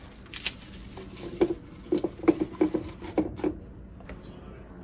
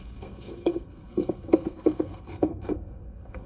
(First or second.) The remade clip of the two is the second